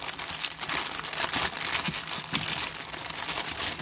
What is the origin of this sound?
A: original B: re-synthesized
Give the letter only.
A